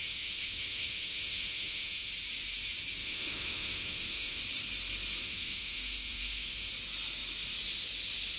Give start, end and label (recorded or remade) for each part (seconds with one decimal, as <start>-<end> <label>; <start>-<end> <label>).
0.0-2.1 remade; 2.1-3.0 recorded; 3.0-4.4 remade; 4.4-5.2 recorded; 5.2-6.7 remade; 6.7-8.4 recorded